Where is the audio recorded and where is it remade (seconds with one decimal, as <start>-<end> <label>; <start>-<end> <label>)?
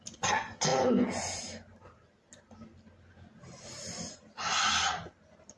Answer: 0.0-5.6 recorded